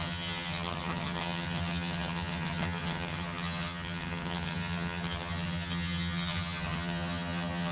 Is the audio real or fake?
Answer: fake